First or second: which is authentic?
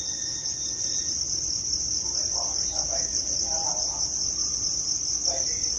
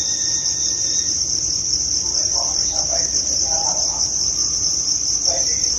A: first